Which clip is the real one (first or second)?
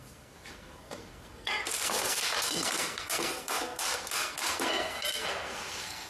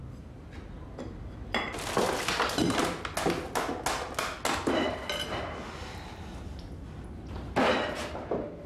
second